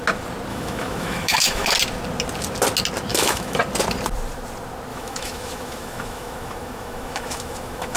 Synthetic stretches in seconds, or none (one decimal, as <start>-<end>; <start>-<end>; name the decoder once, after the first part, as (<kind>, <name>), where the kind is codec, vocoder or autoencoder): 0.5-1.7 (autoencoder, DAC-VAE); 3.1-3.6; 4.9-8.0